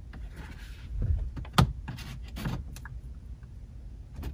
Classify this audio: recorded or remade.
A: recorded